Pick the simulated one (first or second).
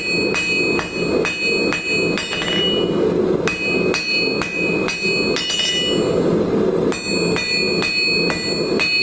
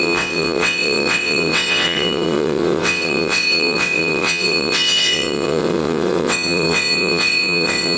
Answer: second